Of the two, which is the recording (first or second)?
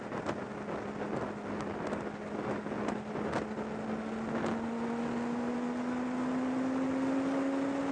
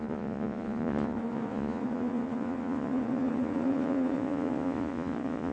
first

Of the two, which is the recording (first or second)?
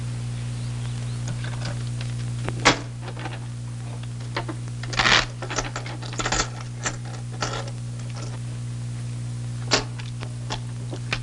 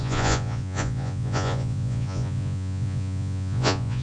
first